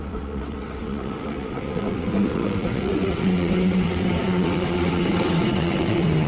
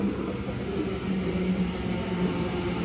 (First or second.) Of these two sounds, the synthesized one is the first